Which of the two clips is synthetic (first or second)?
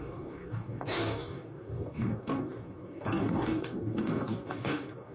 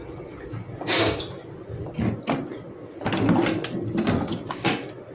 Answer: first